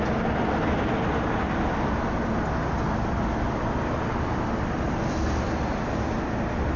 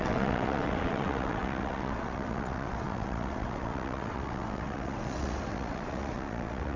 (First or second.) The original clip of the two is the first